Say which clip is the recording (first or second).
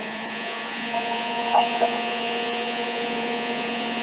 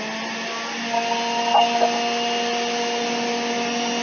second